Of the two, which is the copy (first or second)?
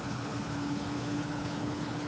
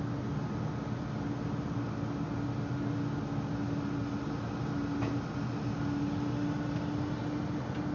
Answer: first